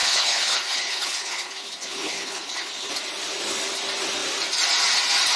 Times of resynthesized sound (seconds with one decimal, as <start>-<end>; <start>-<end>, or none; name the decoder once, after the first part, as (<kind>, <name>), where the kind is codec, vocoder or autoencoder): 0.0-2.9 (codec, HILCodec)